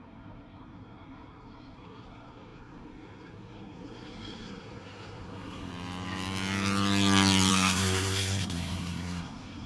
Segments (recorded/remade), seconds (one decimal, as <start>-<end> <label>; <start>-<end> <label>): 0.0-5.7 remade; 5.7-7.5 recorded; 7.5-9.7 remade